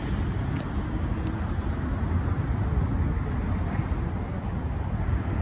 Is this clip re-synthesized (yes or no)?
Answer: no